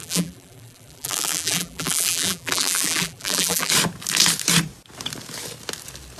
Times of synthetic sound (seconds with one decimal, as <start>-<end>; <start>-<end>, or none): 0.0-3.7